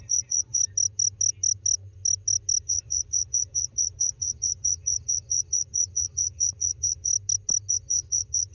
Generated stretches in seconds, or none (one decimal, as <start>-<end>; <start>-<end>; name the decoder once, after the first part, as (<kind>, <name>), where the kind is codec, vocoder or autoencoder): 0.0-0.6 (vocoder, Vocos); 2.6-7.1; 7.7-8.5